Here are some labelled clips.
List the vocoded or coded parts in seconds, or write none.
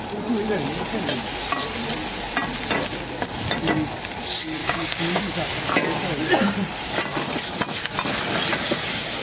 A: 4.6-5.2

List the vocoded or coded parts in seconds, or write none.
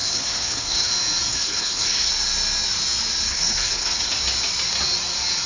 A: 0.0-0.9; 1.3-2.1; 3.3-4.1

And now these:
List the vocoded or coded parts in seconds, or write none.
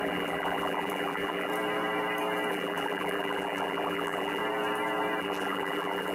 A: 0.0-1.5; 2.5-4.4; 5.2-6.1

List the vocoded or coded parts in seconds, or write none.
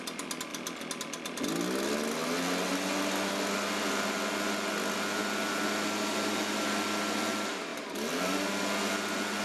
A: none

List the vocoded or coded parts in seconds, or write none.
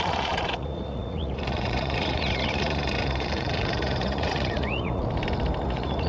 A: 0.0-5.0; 5.6-6.1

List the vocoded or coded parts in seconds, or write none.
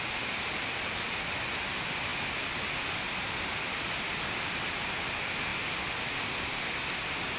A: none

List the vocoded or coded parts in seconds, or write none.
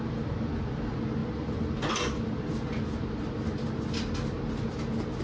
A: none